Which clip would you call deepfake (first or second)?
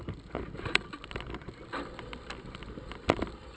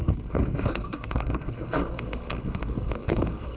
second